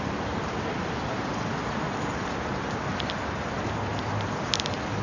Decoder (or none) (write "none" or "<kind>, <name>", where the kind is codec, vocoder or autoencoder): none